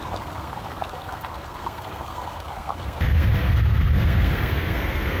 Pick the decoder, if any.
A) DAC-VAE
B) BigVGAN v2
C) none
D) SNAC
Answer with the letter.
D